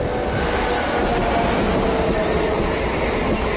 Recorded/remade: recorded